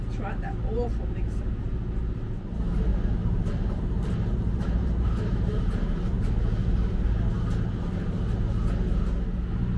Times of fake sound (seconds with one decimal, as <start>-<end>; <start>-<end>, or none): 2.9-6.3